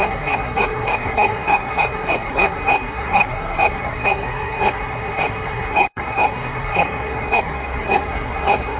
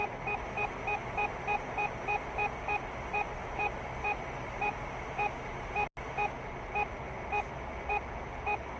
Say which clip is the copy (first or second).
first